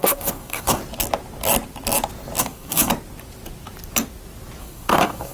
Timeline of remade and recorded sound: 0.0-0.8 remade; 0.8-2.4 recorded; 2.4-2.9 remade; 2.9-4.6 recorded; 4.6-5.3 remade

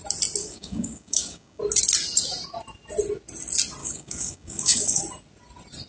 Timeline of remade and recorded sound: 0.0-0.4 recorded; 0.4-1.6 remade; 1.6-3.8 recorded; 3.8-5.0 remade; 5.0-5.9 recorded

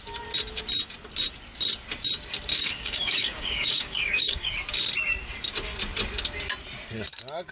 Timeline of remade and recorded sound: 0.0-2.5 recorded; 2.5-4.5 remade; 4.5-7.5 recorded

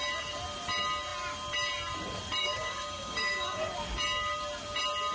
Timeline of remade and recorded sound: 0.0-2.4 recorded; 2.4-3.6 remade; 3.6-5.1 recorded